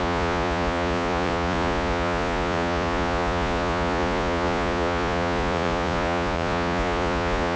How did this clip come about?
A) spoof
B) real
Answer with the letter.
A